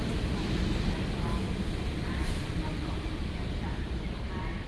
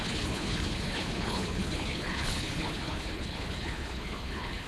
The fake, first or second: second